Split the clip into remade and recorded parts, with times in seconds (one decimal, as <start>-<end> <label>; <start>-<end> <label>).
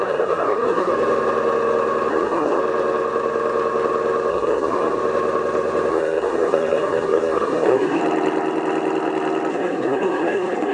0.0-0.9 remade; 0.9-2.1 recorded; 2.1-2.6 remade; 2.6-4.3 recorded; 4.3-5.0 remade; 5.0-5.9 recorded; 5.9-8.0 remade; 8.0-9.5 recorded; 9.5-10.7 remade